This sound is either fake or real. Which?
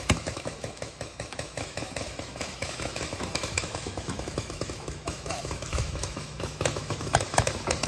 fake